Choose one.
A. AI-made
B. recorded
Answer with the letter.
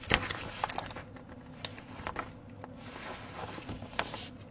B